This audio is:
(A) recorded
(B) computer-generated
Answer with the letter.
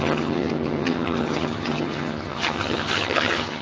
B